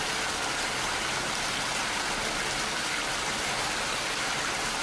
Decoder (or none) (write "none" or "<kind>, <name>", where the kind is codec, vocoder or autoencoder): none